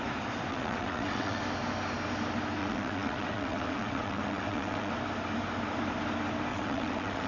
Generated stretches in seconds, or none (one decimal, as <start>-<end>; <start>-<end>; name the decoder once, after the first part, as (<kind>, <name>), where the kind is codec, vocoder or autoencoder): 0.5-1.4 (vocoder, WaveNeXt); 2.6-4.9; 6.5-7.3